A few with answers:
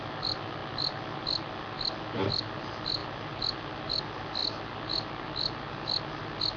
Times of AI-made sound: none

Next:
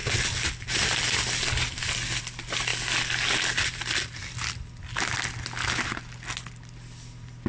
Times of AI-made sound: none

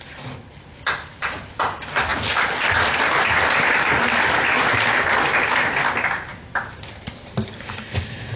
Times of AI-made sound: 2.1-5.4 (vocoder, BigVGAN v2); 6.3-7.8

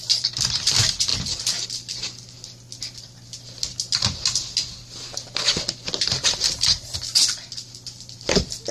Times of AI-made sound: none

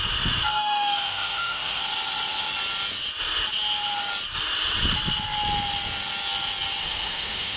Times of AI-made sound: 0.5-1.8 (autoencoder, DAC-VAE); 6.8-7.6

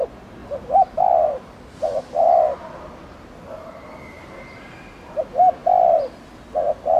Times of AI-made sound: 0.4-1.1 (vocoder, BigVGAN v2)

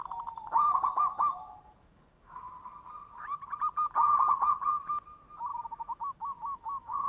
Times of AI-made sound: 0.9-2.5 (autoencoder, DAC-VAE); 5.5-7.1